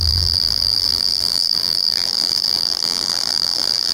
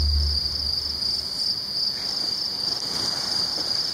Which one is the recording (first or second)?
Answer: second